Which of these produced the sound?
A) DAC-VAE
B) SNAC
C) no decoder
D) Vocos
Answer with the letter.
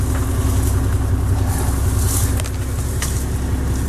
C